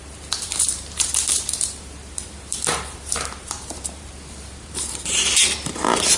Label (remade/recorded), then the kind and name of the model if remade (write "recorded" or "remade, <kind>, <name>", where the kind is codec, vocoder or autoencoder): remade, vocoder, BigVGAN v2